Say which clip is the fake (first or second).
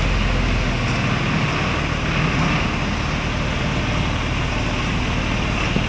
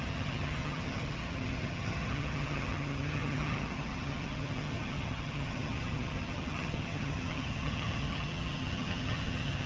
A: second